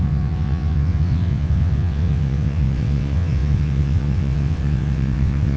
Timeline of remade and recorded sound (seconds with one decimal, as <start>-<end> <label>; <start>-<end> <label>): 0.0-5.6 remade